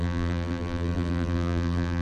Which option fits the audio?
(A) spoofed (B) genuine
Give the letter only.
A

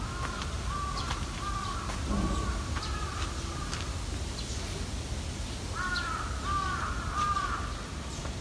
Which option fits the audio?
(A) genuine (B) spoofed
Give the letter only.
A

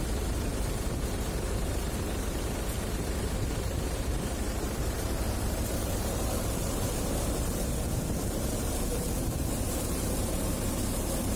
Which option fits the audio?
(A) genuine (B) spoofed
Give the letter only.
B